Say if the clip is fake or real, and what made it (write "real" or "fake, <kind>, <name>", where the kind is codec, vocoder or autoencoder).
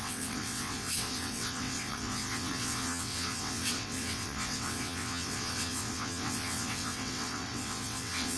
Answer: fake, vocoder, WaveNeXt